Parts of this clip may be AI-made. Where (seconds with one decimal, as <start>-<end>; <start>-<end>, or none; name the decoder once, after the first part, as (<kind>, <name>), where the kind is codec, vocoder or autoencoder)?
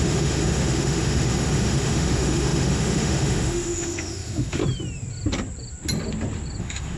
0.0-4.6 (autoencoder, DAC-VAE); 6.6-7.0